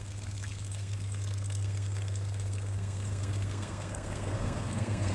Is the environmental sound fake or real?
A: fake